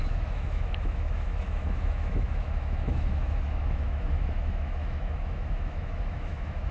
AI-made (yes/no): yes